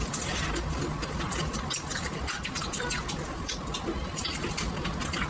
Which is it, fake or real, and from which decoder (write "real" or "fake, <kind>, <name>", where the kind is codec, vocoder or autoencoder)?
real